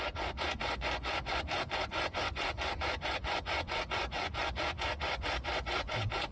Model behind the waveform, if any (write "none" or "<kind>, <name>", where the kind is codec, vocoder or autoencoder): vocoder, Vocos